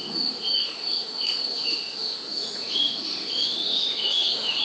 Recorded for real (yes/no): no